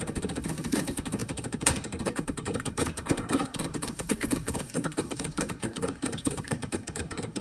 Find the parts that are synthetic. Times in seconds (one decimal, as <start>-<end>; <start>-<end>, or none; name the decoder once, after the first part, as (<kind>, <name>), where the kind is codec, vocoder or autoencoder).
0.0-7.4 (codec, SNAC)